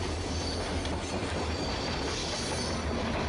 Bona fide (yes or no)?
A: yes